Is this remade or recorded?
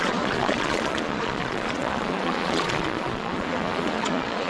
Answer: remade